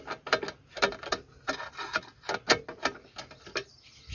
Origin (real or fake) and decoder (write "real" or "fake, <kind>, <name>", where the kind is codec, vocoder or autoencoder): real